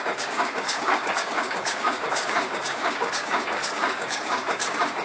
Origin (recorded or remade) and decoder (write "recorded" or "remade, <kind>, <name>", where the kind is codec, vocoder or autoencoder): remade, codec, DAC